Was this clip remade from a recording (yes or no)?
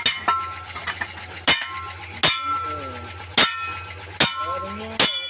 no